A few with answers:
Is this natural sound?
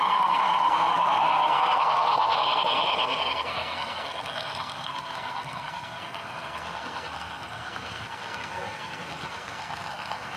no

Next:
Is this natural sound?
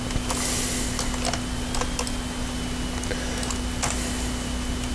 yes